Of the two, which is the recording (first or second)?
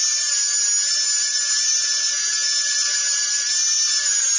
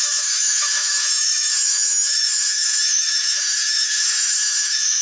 first